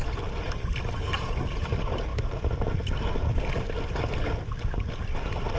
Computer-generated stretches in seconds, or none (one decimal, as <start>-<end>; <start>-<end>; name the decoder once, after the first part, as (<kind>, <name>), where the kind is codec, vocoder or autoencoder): 2.1-5.6 (vocoder, BigVGAN v2)